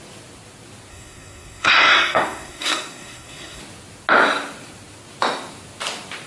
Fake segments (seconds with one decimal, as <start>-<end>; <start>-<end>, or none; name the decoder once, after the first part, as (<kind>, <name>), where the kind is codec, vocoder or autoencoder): 0.9-3.6 (codec, SNAC)